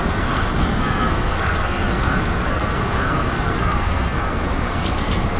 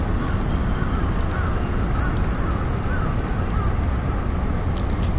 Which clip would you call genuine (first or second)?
second